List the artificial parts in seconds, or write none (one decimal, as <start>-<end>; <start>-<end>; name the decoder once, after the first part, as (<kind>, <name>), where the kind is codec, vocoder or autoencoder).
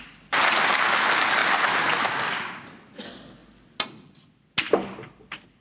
1.4-2.0 (vocoder, BigVGAN v2)